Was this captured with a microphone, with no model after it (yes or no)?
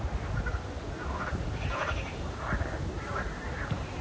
yes